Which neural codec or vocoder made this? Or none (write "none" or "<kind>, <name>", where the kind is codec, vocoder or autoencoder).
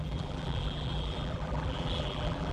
vocoder, BigVGAN v2